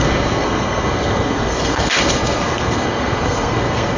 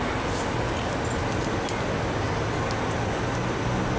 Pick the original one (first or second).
second